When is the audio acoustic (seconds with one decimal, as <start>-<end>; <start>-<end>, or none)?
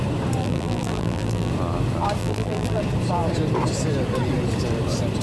0.0-0.4; 1.5-2.2; 2.8-5.2